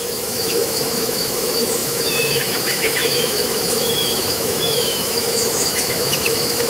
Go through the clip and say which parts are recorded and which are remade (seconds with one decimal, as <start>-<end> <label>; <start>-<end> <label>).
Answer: 0.0-6.7 remade